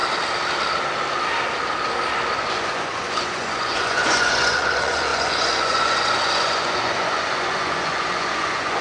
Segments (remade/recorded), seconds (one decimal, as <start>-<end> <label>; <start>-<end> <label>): 0.0-2.5 recorded; 2.5-8.8 remade